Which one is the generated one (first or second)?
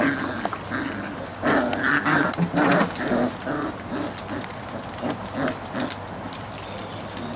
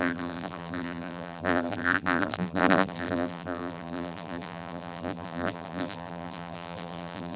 second